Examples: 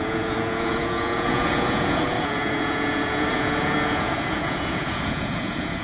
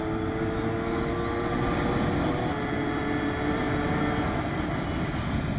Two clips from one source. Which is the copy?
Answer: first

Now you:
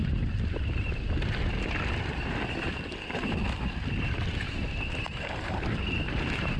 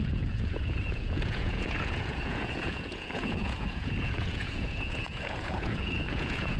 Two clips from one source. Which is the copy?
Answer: second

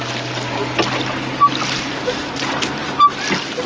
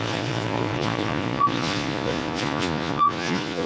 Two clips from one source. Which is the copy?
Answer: second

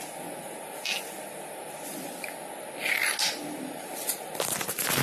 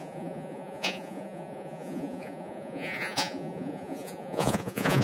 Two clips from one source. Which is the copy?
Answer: second